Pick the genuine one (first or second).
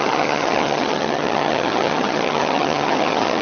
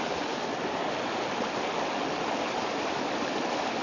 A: second